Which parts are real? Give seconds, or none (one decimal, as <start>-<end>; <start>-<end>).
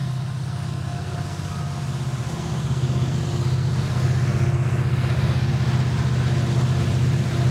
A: 1.6-2.2; 5.5-7.5